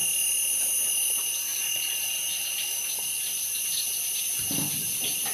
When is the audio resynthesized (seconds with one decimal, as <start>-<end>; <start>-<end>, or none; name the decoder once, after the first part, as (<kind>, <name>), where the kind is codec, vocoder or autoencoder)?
none